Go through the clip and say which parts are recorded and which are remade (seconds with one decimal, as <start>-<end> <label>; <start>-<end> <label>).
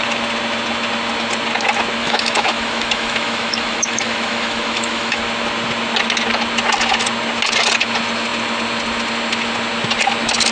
0.0-2.0 recorded; 2.0-5.2 remade; 5.2-10.5 recorded